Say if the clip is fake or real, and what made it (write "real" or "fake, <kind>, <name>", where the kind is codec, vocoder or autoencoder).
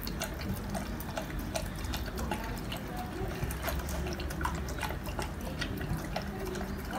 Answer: real